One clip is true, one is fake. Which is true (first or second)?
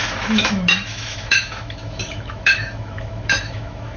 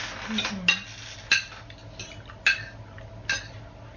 second